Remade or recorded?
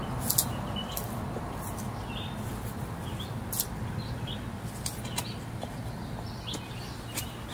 recorded